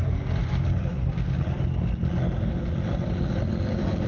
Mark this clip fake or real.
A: real